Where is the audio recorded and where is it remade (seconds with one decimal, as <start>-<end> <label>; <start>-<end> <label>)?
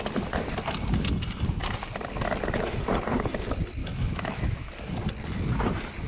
0.0-3.8 recorded; 3.8-4.7 remade; 4.7-6.1 recorded